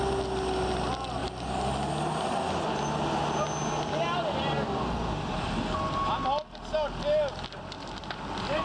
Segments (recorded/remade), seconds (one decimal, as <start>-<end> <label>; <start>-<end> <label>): 0.0-8.6 recorded